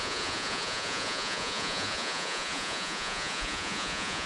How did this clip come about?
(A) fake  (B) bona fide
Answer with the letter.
A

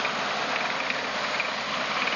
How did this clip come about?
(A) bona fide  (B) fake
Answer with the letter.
A